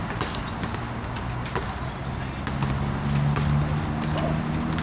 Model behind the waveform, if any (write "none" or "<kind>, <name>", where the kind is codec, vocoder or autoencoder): none